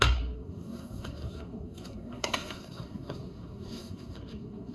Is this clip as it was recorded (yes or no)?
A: no